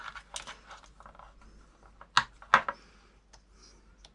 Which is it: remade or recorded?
recorded